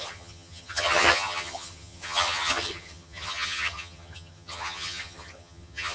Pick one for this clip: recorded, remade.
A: remade